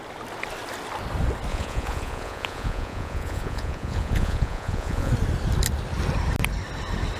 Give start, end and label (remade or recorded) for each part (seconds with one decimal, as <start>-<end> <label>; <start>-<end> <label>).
0.0-1.5 recorded; 1.5-5.1 remade; 5.1-7.2 recorded